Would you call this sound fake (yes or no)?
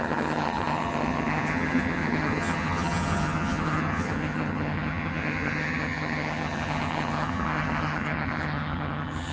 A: yes